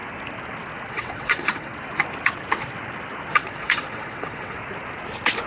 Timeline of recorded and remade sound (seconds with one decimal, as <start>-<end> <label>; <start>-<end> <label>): 0.0-0.9 recorded; 0.9-1.7 remade; 1.7-3.3 recorded; 3.3-4.6 remade; 4.6-5.5 recorded